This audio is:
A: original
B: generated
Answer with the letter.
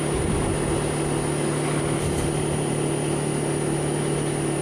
A